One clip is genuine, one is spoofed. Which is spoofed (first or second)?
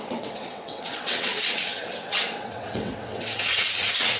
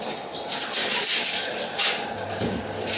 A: first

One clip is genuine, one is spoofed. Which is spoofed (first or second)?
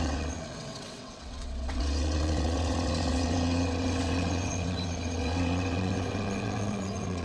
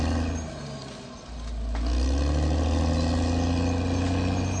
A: first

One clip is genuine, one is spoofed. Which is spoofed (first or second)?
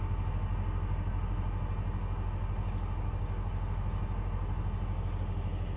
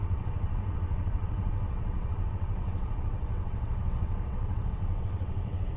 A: second